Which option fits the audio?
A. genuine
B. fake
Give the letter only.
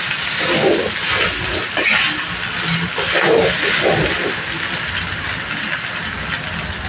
A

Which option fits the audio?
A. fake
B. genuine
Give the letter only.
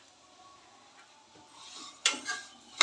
B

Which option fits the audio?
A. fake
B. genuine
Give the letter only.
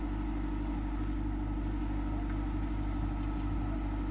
B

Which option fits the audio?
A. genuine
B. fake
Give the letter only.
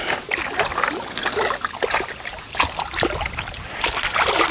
A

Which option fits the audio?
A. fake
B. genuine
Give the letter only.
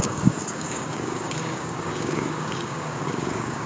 A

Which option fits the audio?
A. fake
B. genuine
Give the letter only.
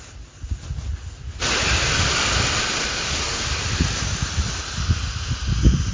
B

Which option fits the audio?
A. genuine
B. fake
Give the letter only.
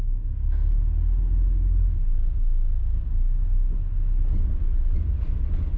A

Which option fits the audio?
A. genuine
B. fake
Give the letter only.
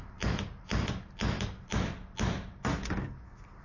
A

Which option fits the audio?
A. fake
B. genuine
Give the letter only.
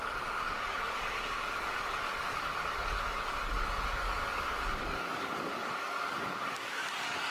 A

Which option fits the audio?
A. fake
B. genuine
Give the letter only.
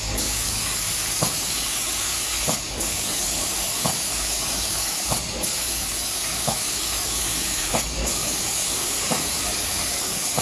A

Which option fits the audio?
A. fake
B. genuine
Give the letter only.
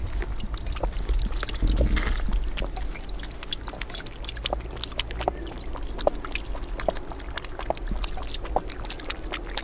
B